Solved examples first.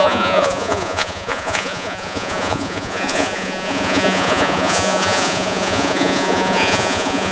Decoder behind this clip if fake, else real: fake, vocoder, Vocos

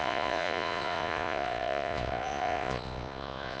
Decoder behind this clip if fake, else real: fake, vocoder, Vocos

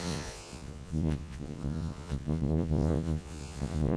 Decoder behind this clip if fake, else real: fake, vocoder, Vocos